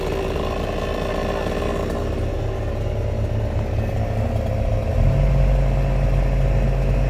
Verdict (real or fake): real